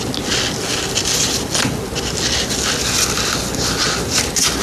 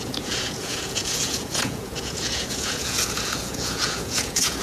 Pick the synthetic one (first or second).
second